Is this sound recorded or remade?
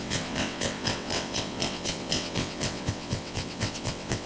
remade